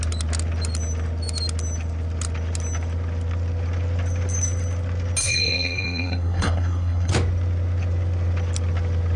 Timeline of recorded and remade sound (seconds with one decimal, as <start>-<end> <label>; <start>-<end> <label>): 0.0-5.2 recorded; 5.2-7.1 remade; 7.1-9.2 recorded